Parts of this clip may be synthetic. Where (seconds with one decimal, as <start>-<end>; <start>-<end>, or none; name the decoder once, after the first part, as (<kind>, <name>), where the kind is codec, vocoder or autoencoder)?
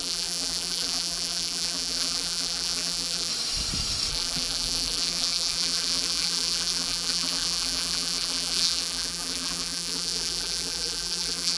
0.0-3.3 (vocoder, BigVGAN v2); 4.1-11.6